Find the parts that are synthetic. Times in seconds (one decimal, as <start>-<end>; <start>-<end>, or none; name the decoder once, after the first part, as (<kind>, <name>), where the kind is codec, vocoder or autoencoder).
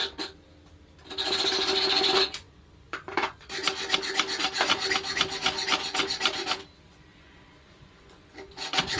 2.1-3.6 (vocoder, Vocos); 6.9-9.0